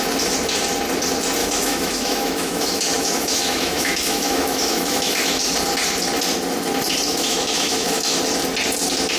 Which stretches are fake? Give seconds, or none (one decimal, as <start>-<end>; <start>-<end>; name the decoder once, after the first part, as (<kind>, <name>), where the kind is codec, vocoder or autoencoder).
1.4-5.4 (autoencoder, DAC-VAE); 7.1-8.2